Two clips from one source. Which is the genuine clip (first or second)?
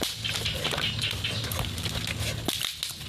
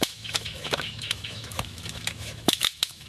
first